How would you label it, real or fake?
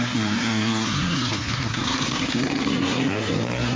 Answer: fake